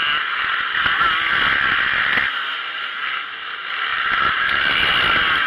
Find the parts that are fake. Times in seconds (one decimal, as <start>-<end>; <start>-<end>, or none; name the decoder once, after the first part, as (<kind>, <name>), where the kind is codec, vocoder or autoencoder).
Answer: 3.9-4.9 (vocoder, BigVGAN v2)